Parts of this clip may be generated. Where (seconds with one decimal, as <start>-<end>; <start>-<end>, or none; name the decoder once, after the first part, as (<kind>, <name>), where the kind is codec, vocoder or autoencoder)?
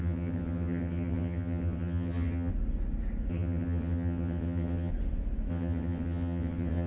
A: 0.0-2.5 (vocoder, HiFi-GAN); 3.3-4.9; 5.5-6.9